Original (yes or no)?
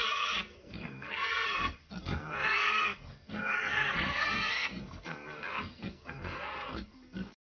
no